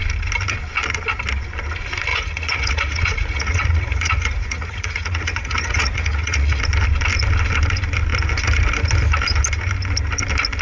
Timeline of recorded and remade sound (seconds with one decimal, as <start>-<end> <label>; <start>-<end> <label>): 0.0-2.1 recorded; 2.1-6.6 remade; 6.6-10.6 recorded